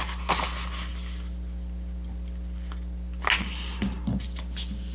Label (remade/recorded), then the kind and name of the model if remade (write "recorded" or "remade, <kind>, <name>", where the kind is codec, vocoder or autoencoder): recorded